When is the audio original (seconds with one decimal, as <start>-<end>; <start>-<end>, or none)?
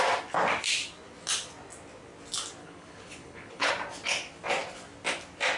0.0-2.6; 3.7-5.6